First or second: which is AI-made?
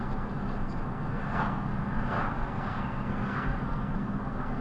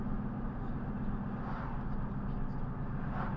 first